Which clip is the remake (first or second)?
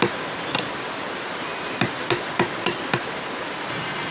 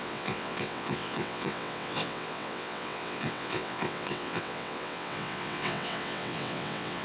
second